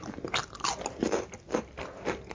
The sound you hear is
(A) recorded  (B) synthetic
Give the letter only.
A